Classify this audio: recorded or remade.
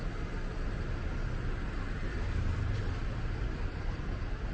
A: recorded